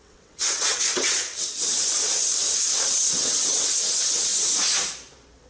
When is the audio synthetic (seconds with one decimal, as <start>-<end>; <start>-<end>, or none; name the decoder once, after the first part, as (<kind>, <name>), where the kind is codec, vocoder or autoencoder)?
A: 0.0-4.3 (vocoder, WaveNeXt)